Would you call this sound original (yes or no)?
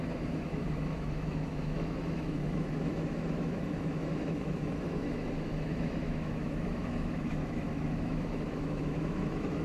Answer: no